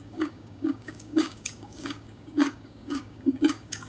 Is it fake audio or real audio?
fake